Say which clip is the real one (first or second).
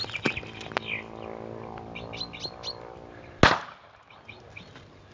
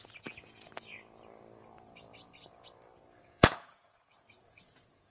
first